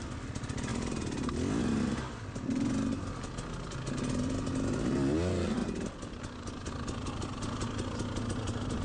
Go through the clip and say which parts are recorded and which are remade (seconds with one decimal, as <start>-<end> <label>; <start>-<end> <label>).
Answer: 0.0-8.8 recorded